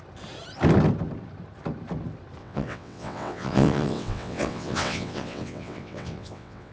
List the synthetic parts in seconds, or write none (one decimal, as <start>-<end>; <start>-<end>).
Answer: 2.4-6.7